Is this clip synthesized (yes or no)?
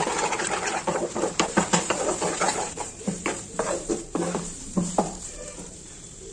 yes